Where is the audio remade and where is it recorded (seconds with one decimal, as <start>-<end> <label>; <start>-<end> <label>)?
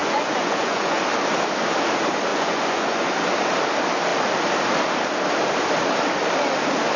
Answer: 0.0-1.0 remade; 1.0-2.3 recorded; 2.3-3.1 remade; 3.1-7.0 recorded